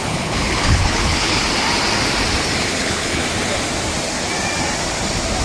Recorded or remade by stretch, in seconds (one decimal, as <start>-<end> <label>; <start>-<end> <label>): 0.0-1.4 remade; 1.4-2.7 recorded; 2.7-3.2 remade; 3.2-5.4 recorded